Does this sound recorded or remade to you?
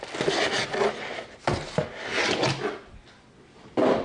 recorded